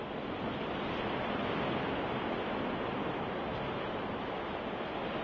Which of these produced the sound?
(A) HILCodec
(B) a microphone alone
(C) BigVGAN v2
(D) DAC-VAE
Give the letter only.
B